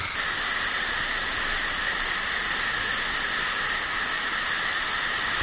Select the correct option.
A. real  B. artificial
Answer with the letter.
A